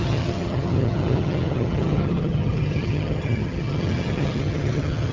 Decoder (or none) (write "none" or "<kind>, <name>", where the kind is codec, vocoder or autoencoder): vocoder, HiFi-GAN